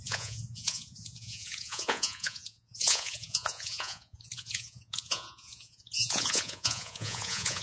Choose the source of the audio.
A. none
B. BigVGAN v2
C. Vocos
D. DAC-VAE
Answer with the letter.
C